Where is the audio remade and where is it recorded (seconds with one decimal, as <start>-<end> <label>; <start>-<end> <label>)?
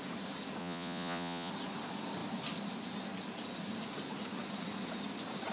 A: 0.0-0.6 recorded; 0.6-1.5 remade; 1.5-5.5 recorded